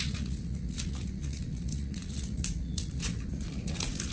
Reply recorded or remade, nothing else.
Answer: remade